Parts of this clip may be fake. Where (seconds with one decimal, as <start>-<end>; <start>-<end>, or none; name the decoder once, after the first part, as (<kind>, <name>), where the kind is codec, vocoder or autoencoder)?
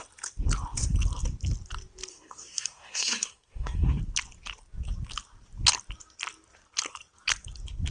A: 2.1-4.0 (codec, SNAC)